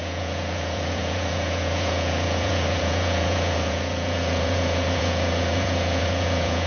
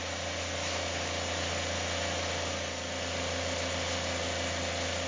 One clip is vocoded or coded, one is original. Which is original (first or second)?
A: second